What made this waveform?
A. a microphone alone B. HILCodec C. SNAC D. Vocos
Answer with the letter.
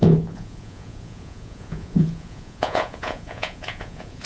D